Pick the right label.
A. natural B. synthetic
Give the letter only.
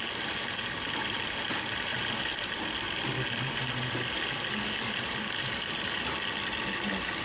A